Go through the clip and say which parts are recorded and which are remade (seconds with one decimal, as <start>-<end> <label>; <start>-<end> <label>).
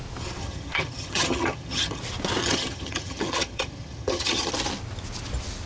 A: 0.0-0.4 recorded; 0.4-2.0 remade; 2.0-2.4 recorded; 2.4-4.5 remade; 4.5-5.7 recorded